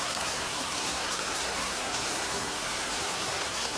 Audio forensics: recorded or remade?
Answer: remade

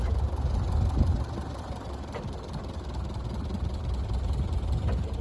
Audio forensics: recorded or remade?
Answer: recorded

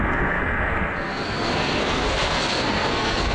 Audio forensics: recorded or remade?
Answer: remade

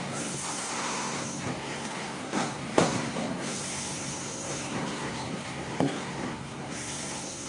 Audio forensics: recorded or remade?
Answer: remade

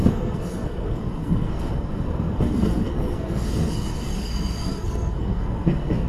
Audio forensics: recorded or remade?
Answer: remade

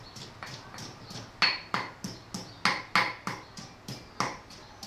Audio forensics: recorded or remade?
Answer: recorded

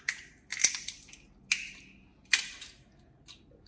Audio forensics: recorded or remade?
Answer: recorded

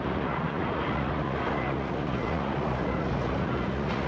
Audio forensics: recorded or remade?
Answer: remade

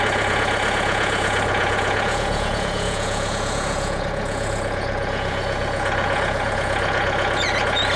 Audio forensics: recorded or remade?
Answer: remade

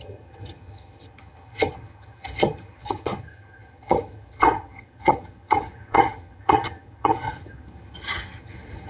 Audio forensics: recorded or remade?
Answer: remade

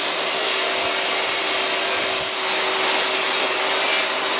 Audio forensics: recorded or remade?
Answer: recorded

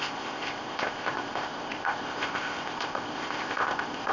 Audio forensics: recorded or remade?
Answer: remade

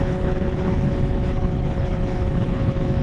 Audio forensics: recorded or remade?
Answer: remade